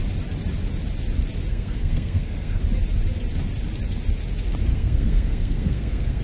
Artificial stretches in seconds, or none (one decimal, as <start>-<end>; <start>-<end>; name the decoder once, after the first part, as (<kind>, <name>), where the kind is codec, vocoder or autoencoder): 1.5-2.6 (codec, SNAC); 4.7-6.2